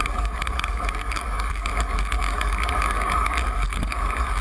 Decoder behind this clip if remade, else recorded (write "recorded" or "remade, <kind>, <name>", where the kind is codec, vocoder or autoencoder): remade, codec, DAC